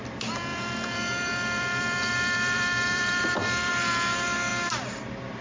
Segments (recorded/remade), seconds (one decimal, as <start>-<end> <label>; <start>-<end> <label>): 0.0-0.5 recorded; 0.5-3.7 remade; 3.7-5.4 recorded